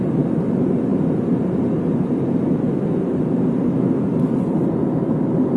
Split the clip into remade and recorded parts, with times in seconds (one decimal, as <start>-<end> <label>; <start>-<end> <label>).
0.0-5.6 recorded